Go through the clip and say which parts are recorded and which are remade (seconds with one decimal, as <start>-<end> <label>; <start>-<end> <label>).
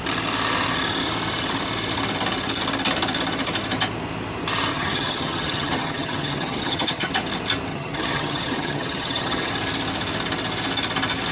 0.0-4.7 recorded; 4.7-7.1 remade; 7.1-7.7 recorded; 7.7-9.5 remade; 9.5-11.3 recorded